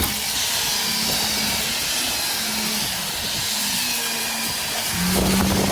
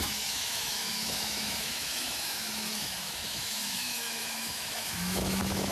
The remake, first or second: second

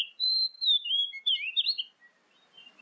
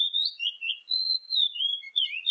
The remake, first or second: second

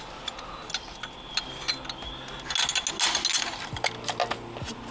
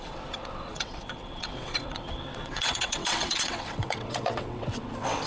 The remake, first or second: second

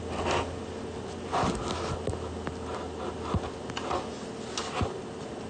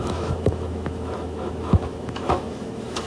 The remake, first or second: second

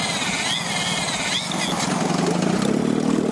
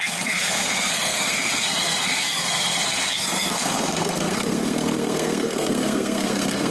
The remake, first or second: second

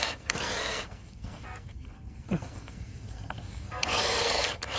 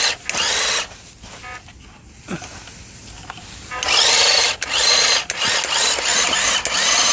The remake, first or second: first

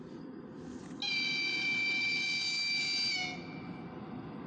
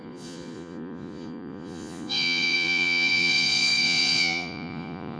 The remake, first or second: second